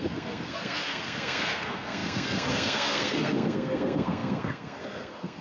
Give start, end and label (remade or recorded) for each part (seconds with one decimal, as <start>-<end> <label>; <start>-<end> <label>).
0.0-5.4 remade